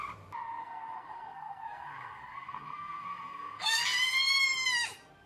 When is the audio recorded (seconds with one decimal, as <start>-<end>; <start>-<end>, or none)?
0.0-0.6; 3.8-5.3